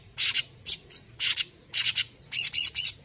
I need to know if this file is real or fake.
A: fake